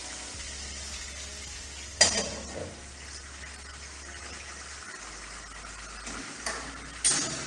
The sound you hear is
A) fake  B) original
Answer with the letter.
B